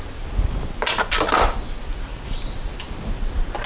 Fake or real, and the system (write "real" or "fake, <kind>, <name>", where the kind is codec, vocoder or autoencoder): real